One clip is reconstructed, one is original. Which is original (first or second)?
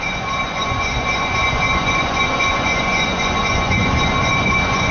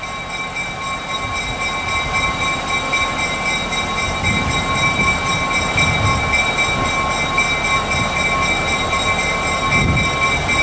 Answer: second